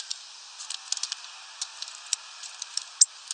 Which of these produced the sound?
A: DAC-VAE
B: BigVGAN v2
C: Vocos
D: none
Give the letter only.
D